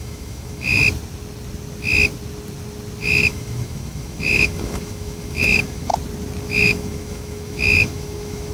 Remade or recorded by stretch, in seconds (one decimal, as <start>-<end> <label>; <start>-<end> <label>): 0.0-0.8 remade; 0.8-3.0 recorded; 3.0-5.9 remade; 5.9-6.4 recorded; 6.4-8.5 remade